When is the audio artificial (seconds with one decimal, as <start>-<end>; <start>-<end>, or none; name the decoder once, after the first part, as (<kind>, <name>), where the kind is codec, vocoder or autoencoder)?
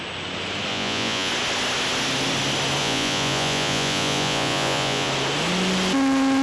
0.7-1.3 (vocoder, Vocos); 2.8-5.1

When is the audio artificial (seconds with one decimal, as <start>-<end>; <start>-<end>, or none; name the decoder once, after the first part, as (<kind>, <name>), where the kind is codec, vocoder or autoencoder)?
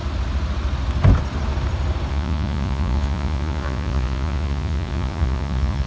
2.1-5.9 (vocoder, Vocos)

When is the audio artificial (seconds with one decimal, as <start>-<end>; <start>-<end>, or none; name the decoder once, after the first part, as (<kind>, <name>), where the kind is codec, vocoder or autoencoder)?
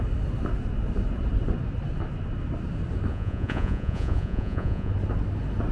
3.1-4.9 (vocoder, Vocos)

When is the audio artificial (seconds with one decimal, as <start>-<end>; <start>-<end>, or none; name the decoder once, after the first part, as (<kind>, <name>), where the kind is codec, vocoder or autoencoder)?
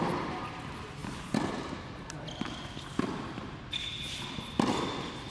none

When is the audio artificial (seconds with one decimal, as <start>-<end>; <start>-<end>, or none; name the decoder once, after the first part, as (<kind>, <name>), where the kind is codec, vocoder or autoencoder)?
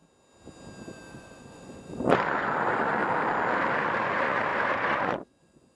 1.1-3.0 (vocoder, Vocos); 3.7-5.7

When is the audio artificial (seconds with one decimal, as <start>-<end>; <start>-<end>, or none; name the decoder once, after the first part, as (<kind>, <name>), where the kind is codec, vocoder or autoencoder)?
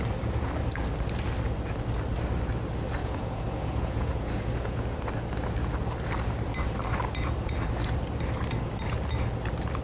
3.0-5.0 (vocoder, Vocos)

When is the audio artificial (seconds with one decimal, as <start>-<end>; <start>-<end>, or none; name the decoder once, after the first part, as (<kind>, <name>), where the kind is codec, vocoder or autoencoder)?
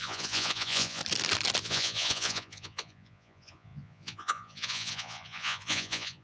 0.0-1.0 (vocoder, Vocos); 1.6-6.2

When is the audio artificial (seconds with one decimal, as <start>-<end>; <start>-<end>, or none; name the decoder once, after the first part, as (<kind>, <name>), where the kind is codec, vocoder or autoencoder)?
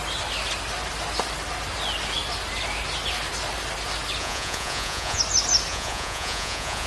4.2-5.2 (vocoder, Vocos); 5.7-6.9